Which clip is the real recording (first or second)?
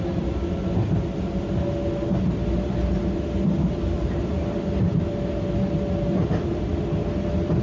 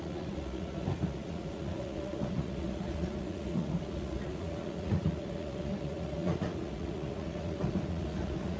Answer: first